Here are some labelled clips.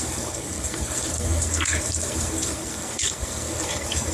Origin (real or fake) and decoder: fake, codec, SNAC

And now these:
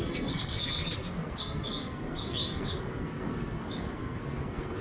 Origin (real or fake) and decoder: fake, codec, SNAC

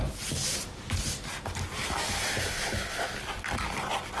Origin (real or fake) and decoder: real